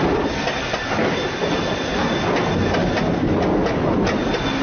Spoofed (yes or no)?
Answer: no